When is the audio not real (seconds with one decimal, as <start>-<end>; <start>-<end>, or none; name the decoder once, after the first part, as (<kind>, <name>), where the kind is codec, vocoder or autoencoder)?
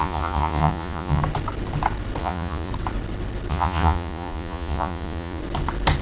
0.0-1.2 (vocoder, Vocos); 2.2-2.7; 3.5-5.4